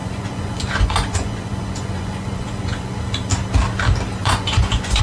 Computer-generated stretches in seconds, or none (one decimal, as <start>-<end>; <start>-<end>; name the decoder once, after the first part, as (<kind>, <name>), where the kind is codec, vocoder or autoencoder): 0.0-3.0 (vocoder, Vocos); 4.2-5.0